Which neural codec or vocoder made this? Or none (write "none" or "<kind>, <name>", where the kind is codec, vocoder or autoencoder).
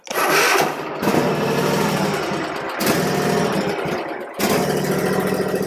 none